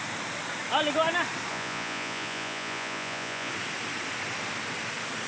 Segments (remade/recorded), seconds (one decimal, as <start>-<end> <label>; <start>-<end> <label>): 0.0-1.5 recorded; 1.5-3.5 remade; 3.5-5.3 recorded